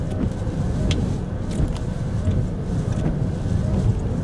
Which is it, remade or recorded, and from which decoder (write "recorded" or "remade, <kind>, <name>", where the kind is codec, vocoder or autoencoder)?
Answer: recorded